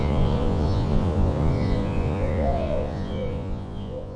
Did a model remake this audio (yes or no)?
yes